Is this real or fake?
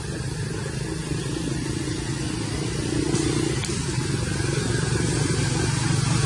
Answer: real